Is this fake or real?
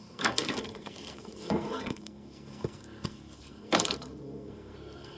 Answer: fake